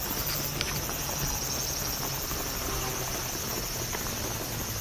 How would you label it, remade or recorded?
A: recorded